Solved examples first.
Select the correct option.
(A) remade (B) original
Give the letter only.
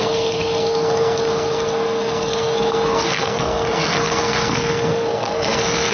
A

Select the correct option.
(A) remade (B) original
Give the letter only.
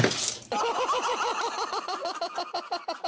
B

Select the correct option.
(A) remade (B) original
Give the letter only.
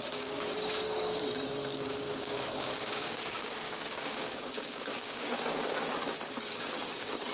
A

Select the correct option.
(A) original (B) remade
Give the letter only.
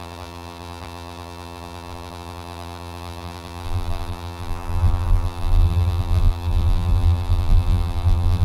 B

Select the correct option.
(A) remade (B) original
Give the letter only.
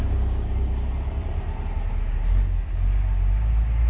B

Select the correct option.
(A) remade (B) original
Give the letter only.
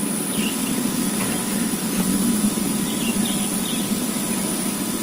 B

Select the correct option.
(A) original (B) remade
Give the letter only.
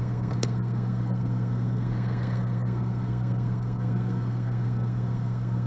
B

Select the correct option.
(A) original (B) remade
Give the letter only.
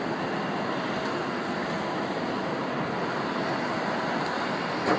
A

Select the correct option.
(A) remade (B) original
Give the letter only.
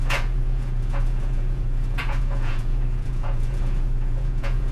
A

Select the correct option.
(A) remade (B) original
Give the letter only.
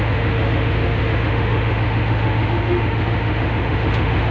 A